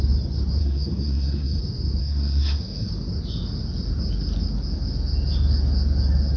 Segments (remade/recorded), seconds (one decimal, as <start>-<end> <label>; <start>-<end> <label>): 0.0-0.6 recorded; 0.6-1.6 remade; 1.6-2.0 recorded; 2.0-2.9 remade; 2.9-6.4 recorded